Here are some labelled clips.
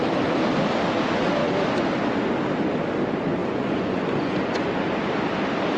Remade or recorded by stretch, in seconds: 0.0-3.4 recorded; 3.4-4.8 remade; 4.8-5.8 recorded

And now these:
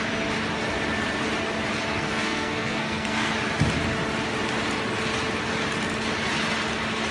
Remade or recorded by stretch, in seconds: 0.0-1.9 recorded; 1.9-3.3 remade; 3.3-7.1 recorded

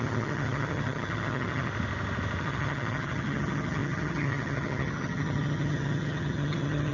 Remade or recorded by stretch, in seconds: 0.0-1.7 remade; 1.7-2.4 recorded; 2.4-6.9 remade

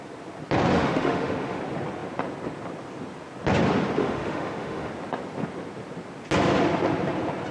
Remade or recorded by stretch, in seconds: 0.0-0.7 recorded; 0.7-1.6 remade; 1.6-4.0 recorded; 4.0-4.9 remade; 4.9-7.5 recorded

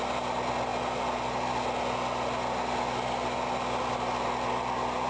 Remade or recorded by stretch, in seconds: 0.0-5.1 recorded

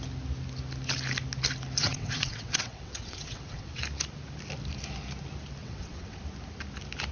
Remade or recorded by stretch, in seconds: 0.0-1.8 recorded; 1.8-3.8 remade; 3.8-5.6 recorded; 5.6-6.2 remade; 6.2-7.1 recorded